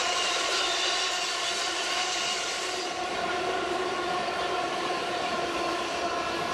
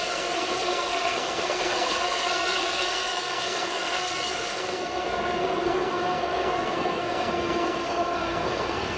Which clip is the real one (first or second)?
first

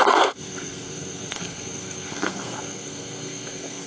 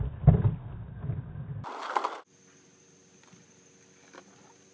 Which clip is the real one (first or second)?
second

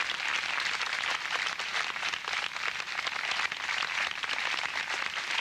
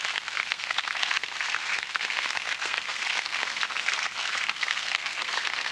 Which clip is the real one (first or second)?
first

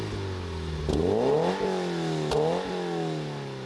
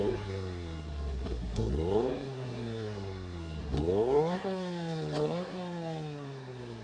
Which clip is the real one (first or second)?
first